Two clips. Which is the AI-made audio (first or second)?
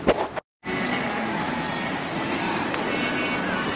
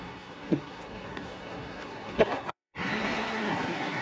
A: second